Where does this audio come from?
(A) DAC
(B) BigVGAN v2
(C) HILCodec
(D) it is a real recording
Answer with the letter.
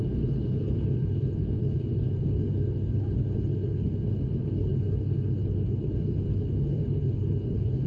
C